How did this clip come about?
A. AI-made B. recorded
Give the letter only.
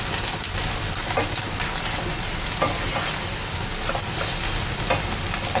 B